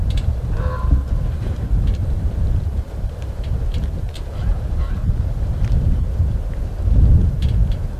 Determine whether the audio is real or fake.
fake